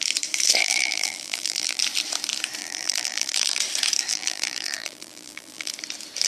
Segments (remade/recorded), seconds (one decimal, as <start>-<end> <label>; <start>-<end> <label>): 0.0-0.6 recorded; 0.6-1.8 remade; 1.8-2.6 recorded; 2.6-3.6 remade; 3.6-4.1 recorded; 4.1-5.7 remade; 5.7-6.3 recorded